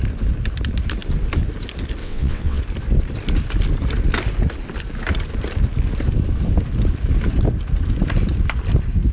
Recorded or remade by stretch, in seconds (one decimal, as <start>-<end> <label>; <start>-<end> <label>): 0.0-2.0 recorded; 2.0-2.6 remade; 2.6-9.1 recorded